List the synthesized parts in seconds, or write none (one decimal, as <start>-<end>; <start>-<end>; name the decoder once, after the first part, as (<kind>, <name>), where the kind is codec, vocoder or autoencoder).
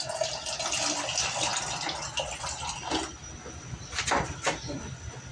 none